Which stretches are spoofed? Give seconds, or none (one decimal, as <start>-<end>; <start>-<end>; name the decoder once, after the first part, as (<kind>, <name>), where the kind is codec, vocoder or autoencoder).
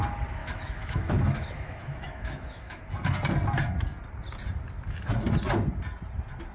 0.4-2.8 (autoencoder, DAC-VAE)